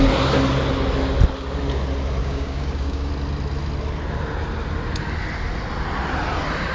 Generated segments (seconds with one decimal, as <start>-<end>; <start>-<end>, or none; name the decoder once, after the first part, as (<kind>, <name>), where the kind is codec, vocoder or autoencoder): 2.2-3.1 (codec, DAC)